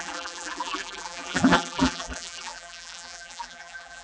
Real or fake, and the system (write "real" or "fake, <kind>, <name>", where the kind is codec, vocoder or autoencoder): fake, vocoder, BigVGAN v2